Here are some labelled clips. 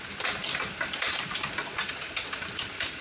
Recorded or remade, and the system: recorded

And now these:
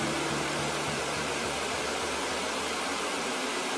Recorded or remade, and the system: remade, vocoder, BigVGAN v2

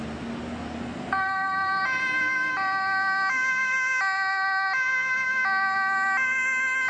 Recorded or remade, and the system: recorded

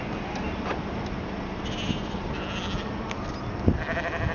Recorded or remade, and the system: recorded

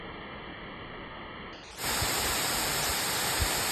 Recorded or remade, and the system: recorded